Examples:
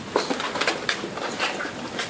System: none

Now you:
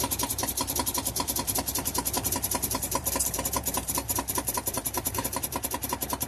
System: vocoder, BigVGAN v2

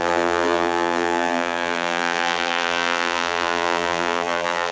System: vocoder, BigVGAN v2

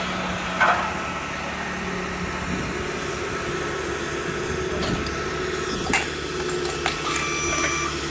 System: none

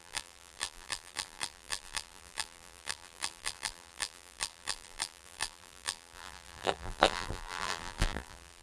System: vocoder, BigVGAN v2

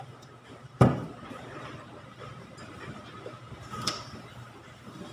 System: vocoder, BigVGAN v2